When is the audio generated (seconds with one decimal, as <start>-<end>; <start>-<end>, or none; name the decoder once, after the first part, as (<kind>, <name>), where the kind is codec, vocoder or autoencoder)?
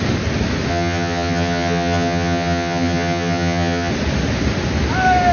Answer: 0.7-3.9 (vocoder, HiFi-GAN)